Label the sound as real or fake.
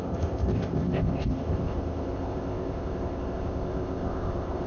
fake